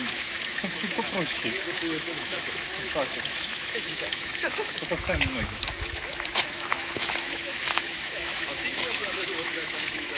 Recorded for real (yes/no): no